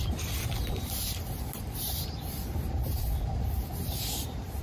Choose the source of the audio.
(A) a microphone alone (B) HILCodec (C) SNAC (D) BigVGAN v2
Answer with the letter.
D